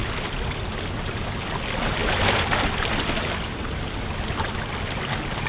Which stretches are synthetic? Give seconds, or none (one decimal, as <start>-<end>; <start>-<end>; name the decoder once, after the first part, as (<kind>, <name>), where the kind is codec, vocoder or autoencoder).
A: none